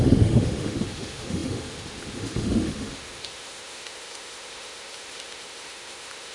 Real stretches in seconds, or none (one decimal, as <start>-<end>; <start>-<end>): none